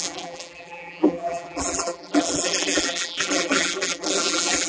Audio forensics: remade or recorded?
remade